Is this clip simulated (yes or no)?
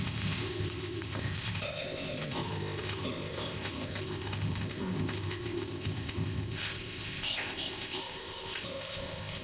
yes